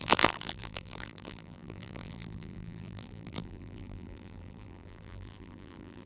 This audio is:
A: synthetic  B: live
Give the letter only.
A